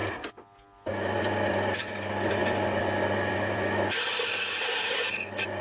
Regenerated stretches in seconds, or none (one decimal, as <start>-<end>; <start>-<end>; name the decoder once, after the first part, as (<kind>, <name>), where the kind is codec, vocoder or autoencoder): none